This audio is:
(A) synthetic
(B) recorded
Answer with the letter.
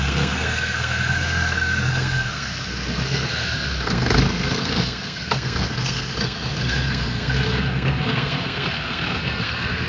A